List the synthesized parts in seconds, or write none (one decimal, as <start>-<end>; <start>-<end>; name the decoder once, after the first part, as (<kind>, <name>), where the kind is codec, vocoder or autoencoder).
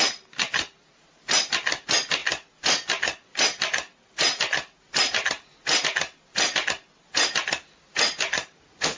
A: none